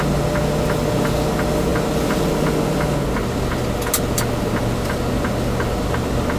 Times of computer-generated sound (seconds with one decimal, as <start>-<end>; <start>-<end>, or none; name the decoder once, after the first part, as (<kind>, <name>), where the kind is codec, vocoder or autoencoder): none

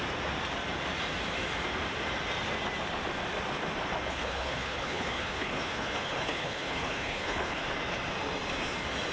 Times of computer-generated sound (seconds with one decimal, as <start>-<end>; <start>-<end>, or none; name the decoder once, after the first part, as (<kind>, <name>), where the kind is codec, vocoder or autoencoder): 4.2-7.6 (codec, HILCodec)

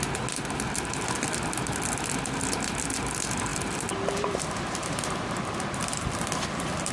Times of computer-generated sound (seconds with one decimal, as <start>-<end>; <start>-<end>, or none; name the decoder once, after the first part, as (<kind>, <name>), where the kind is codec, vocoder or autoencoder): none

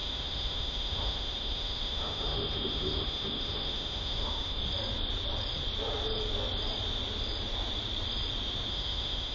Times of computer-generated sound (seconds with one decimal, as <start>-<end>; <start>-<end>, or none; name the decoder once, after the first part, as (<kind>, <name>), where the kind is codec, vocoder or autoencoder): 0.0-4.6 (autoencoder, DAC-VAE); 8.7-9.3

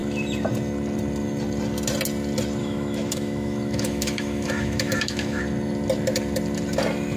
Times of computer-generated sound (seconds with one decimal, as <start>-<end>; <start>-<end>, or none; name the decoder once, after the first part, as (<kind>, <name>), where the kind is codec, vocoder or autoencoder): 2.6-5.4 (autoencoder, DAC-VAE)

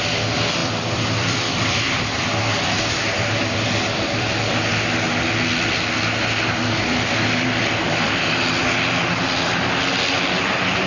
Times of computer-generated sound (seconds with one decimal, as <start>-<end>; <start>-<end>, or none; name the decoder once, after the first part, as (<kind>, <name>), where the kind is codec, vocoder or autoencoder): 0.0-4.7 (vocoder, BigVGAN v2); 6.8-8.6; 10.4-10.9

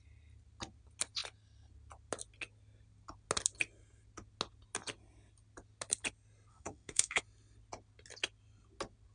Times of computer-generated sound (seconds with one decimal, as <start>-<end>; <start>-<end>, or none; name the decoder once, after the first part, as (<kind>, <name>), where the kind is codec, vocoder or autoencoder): 6.5-7.2 (autoencoder, DAC-VAE)

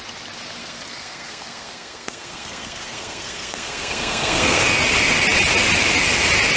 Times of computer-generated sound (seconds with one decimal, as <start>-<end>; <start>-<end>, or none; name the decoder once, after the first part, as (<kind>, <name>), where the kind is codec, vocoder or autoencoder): 0.6-4.6 (codec, SNAC)